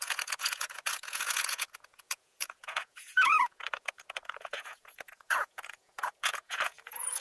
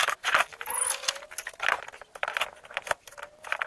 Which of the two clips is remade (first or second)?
first